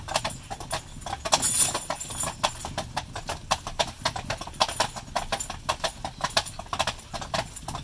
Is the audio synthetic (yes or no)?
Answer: no